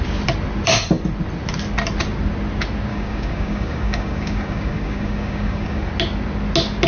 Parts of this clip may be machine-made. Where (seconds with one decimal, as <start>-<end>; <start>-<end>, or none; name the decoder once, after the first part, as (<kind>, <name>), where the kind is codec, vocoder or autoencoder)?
2.9-5.9 (codec, DAC)